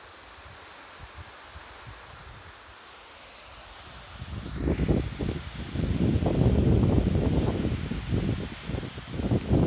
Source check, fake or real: real